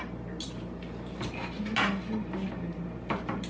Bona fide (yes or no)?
yes